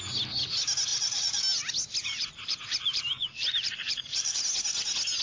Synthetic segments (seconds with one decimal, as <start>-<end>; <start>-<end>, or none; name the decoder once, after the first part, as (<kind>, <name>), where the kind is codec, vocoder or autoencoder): 0.9-1.4 (vocoder, BigVGAN v2); 2.0-4.4